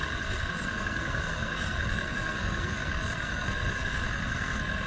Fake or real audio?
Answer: fake